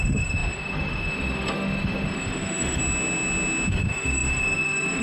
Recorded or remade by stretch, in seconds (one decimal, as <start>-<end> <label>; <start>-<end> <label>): 0.0-2.8 remade; 2.8-3.7 recorded; 3.7-5.0 remade